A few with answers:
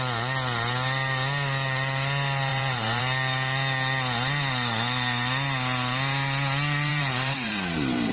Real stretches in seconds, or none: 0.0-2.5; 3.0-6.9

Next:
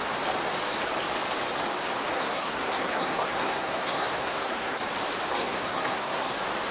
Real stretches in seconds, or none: 0.0-2.1; 4.8-5.4; 6.3-6.7

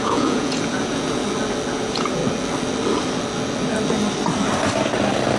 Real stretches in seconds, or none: 1.2-1.7; 2.2-5.4

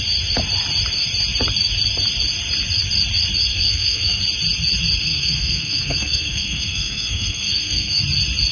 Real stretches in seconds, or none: 0.0-3.5; 4.2-5.0; 8.0-8.5

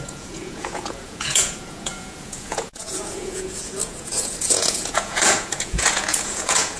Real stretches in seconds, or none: none